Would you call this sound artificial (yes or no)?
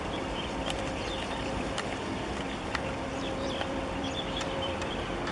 yes